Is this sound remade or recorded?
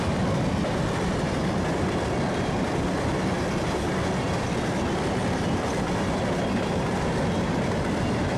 recorded